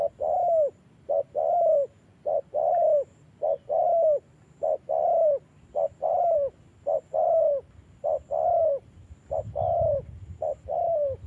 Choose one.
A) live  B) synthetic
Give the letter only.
A